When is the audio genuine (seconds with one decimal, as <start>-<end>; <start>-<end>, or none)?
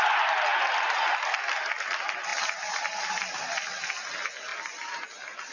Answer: 0.5-1.7